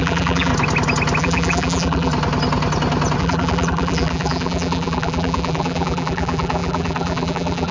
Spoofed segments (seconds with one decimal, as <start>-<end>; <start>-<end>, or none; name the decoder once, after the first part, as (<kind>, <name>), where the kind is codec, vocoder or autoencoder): 0.0-0.5 (vocoder, BigVGAN v2); 1.2-2.1; 3.2-7.7